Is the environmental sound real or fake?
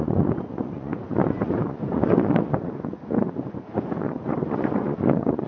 fake